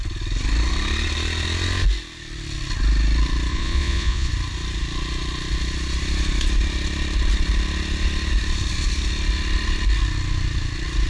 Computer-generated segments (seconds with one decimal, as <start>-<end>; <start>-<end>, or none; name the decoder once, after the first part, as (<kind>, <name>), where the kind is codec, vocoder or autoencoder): 3.5-4.3 (vocoder, Vocos)